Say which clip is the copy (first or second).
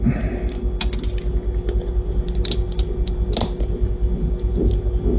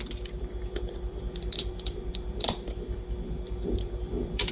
second